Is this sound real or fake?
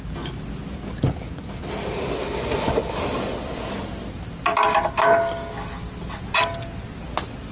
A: real